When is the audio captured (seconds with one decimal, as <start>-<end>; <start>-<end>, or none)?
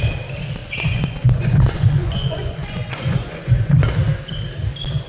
0.0-0.6; 3.7-5.1